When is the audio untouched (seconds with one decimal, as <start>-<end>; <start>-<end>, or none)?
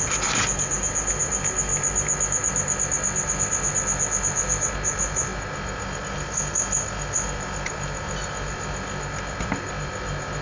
0.0-10.4